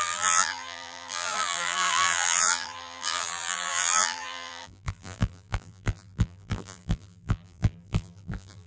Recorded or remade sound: remade